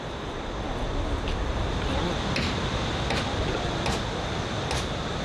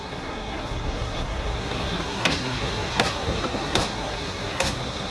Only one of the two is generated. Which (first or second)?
second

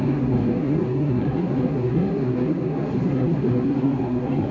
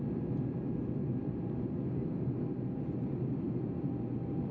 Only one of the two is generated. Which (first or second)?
first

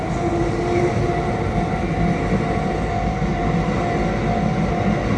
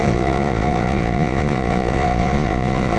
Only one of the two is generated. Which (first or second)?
second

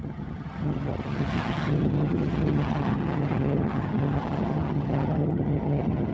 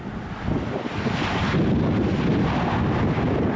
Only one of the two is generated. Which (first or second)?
first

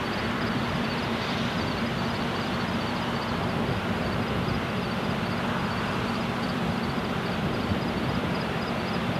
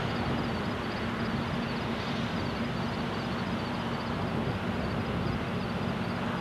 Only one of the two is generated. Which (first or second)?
first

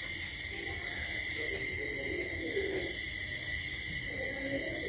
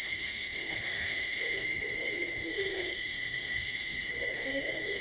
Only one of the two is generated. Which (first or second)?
second